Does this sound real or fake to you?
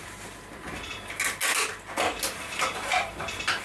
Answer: real